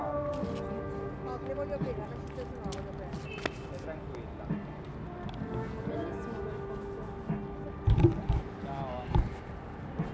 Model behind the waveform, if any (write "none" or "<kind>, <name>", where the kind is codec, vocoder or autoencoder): none